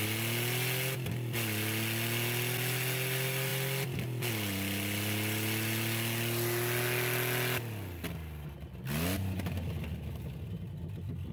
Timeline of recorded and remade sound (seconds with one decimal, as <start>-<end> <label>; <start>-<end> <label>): 0.0-11.3 recorded